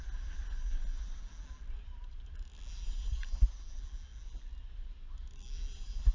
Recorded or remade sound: recorded